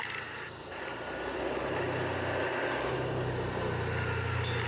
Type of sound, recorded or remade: recorded